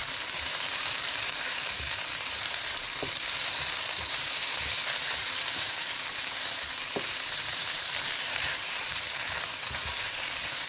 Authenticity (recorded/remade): remade